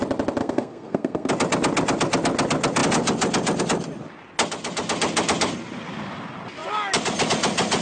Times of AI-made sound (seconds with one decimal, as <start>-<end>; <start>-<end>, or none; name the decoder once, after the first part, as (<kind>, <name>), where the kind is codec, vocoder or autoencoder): 0.4-1.3 (codec, SNAC)